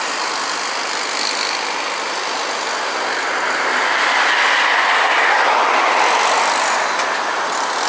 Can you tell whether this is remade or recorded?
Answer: recorded